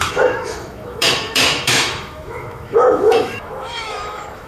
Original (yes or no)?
no